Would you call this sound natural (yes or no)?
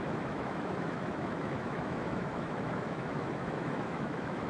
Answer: no